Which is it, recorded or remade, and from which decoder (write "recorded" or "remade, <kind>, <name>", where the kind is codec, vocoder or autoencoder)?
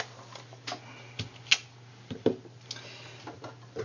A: recorded